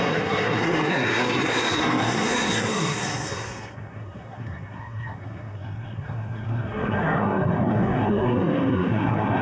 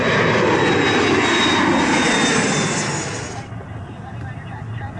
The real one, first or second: second